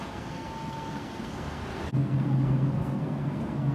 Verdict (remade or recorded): remade